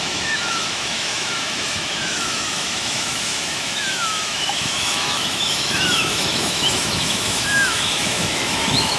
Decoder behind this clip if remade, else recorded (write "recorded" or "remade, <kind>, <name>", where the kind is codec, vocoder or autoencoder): remade, autoencoder, DAC-VAE